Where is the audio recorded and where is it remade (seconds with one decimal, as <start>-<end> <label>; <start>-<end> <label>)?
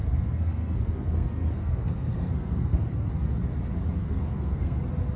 0.0-3.1 remade; 3.1-4.0 recorded; 4.0-4.8 remade; 4.8-5.2 recorded